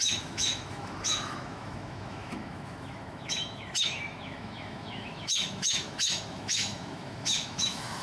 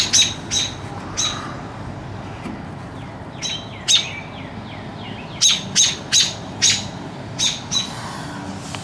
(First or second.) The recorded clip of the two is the second